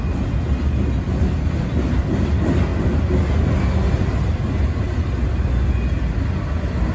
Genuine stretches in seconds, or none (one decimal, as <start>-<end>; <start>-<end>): 0.0-6.9